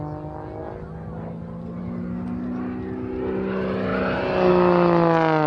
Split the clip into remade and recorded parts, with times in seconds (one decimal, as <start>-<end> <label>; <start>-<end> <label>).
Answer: 0.0-5.5 recorded